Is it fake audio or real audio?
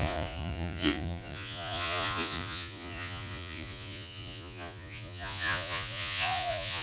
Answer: fake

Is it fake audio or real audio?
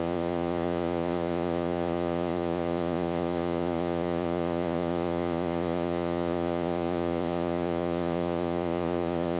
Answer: fake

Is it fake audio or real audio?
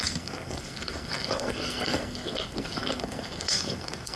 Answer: fake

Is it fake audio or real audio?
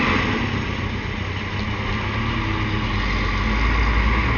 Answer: real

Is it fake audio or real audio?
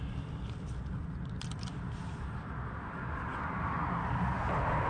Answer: real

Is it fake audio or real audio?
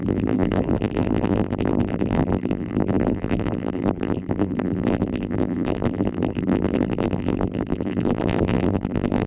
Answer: fake